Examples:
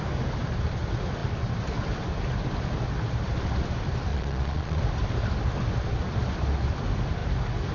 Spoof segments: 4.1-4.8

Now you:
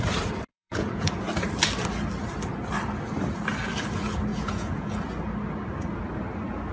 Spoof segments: 0.5-1.1; 4.3-4.9

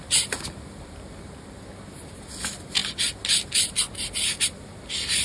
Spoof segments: none

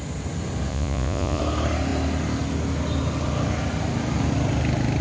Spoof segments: 0.7-1.4

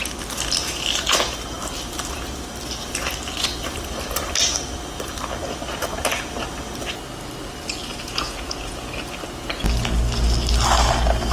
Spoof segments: 7.9-8.9

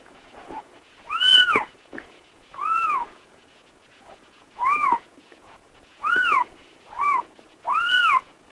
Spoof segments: 0.0-8.5